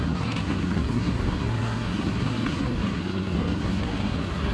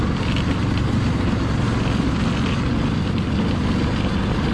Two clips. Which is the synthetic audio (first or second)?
first